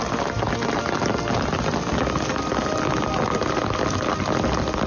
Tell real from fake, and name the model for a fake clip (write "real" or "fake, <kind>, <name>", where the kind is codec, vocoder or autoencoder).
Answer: real